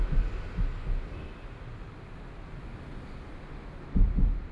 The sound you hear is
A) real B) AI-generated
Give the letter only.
A